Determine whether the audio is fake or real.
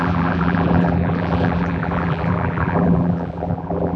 fake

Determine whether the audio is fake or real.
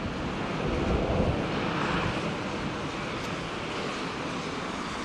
real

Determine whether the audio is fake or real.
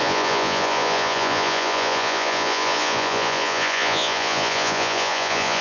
fake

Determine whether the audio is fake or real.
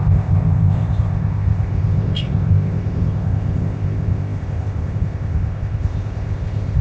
fake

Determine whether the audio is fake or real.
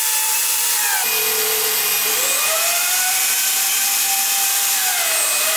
fake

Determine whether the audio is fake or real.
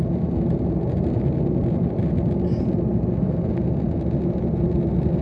real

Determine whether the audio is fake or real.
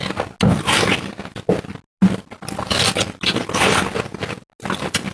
real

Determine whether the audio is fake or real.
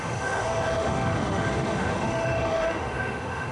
fake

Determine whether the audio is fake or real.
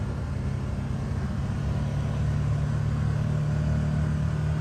real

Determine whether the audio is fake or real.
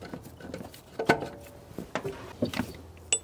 real